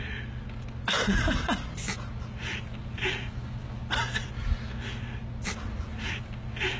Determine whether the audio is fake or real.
real